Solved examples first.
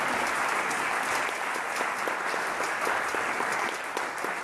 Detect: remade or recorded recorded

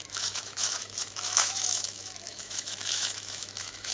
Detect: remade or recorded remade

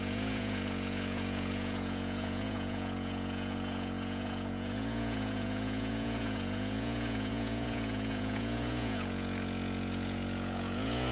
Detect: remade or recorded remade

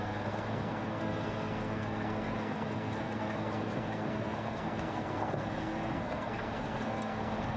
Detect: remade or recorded remade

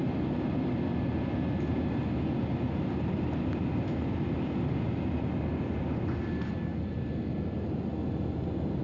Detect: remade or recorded recorded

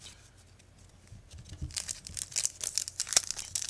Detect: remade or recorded recorded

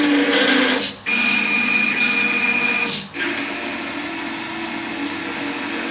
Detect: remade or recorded recorded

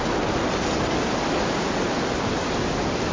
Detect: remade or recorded recorded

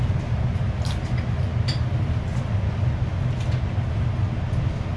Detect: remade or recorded recorded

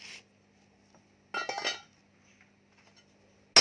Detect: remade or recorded recorded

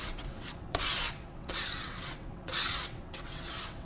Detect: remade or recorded remade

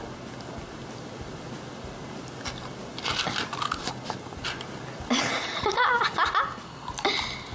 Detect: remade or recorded recorded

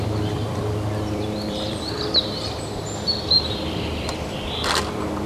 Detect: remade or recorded remade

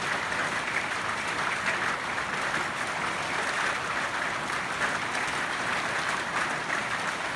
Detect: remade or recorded recorded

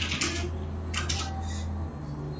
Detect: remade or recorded recorded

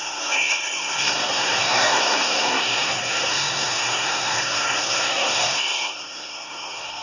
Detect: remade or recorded remade